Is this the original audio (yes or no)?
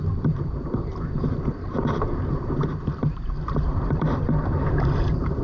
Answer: no